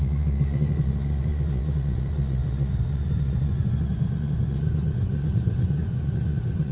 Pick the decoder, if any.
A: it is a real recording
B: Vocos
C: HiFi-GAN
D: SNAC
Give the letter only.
B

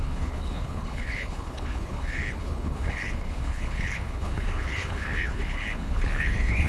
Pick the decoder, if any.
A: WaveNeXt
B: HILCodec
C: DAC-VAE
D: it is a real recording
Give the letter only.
B